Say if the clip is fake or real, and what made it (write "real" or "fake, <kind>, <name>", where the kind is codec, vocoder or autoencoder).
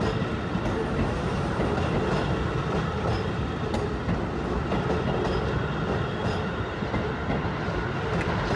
real